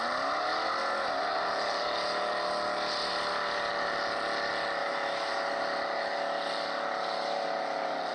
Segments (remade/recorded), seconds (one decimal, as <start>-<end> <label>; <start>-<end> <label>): 0.0-4.8 recorded; 4.8-5.4 remade; 5.4-8.1 recorded

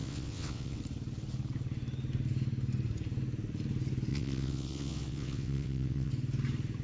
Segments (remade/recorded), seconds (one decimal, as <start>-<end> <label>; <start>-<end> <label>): 0.0-0.8 remade; 0.8-4.1 recorded; 4.1-6.1 remade; 6.1-6.8 recorded